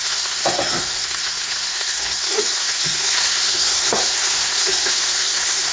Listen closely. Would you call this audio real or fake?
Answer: fake